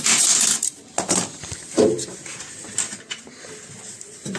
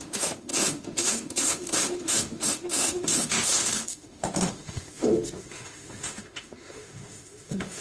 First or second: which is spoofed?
second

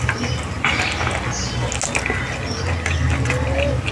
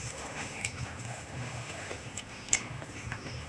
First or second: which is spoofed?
second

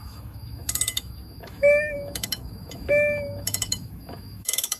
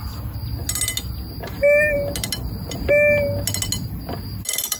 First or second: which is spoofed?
first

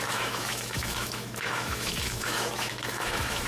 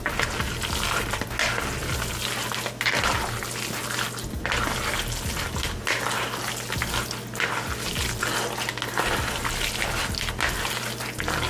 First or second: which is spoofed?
first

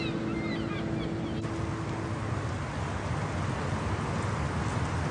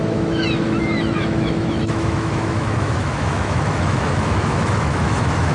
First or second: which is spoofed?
second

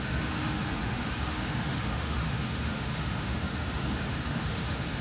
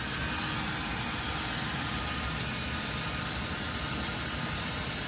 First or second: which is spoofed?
first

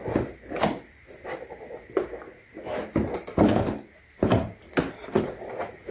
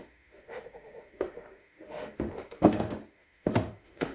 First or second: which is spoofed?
second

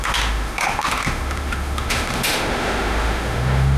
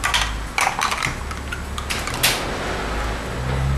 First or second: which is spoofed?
first